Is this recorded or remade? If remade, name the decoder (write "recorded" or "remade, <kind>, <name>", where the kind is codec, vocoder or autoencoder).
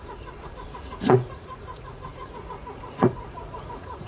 remade, vocoder, Vocos